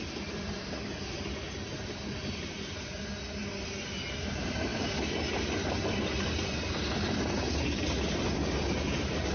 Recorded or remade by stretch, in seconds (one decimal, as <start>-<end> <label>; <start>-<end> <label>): 0.0-9.3 recorded